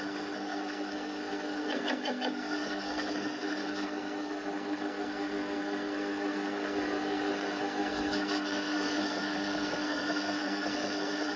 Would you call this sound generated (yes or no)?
yes